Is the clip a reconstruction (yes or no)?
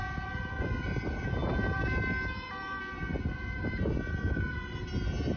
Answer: no